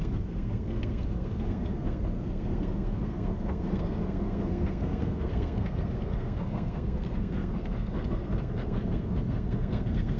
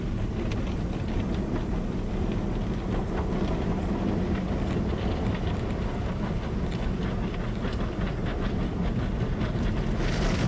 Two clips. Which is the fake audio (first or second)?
first